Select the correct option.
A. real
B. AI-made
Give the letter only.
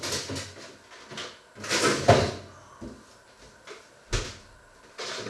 A